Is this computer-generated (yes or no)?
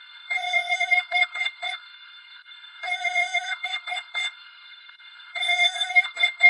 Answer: yes